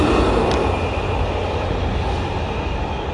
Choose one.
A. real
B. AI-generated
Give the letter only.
A